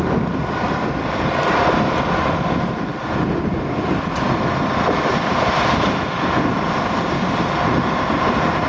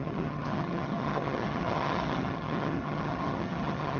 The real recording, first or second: first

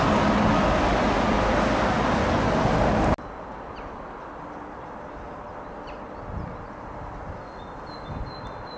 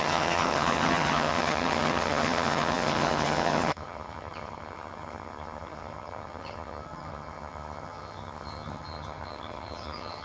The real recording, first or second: first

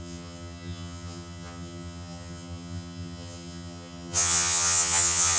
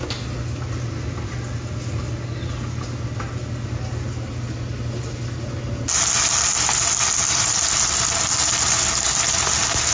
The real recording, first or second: second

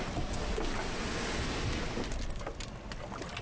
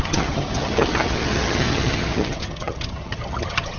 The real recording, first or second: first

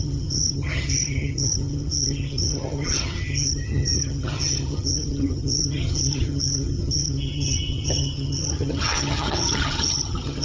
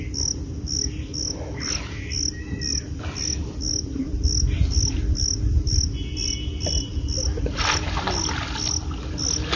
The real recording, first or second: second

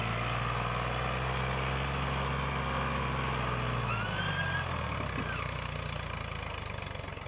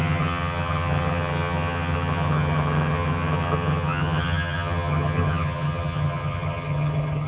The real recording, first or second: first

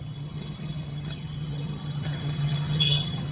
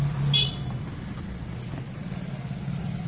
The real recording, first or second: second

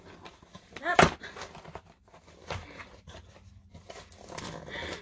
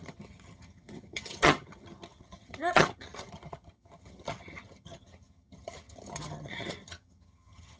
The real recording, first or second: first